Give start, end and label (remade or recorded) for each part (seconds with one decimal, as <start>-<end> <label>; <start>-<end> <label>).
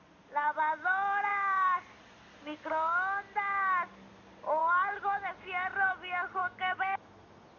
0.0-6.4 recorded; 6.4-7.1 remade; 7.1-7.6 recorded